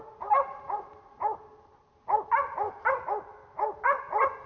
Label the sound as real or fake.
real